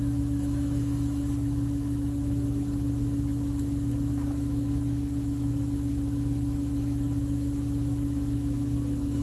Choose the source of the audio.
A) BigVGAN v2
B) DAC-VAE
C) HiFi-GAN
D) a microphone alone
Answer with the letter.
B